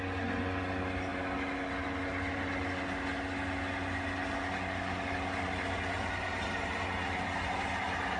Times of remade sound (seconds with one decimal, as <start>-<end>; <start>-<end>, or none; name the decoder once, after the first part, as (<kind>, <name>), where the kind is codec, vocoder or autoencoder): none